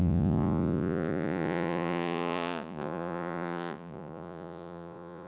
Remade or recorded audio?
remade